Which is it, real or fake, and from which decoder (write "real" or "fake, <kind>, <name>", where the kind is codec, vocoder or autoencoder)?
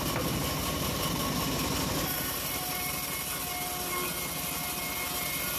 real